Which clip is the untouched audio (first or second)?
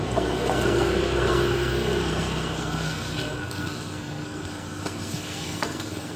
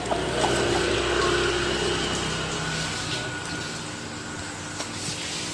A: second